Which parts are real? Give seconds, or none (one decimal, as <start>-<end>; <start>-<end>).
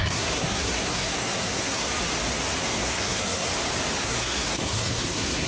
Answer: 1.9-2.6; 3.5-4.0